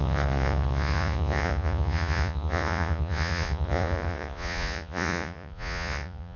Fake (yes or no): yes